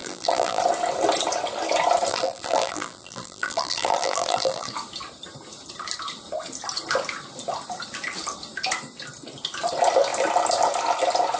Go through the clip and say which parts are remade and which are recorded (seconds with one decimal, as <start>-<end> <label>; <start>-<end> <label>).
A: 0.0-0.6 remade; 0.6-2.1 recorded; 2.1-4.7 remade; 4.7-11.4 recorded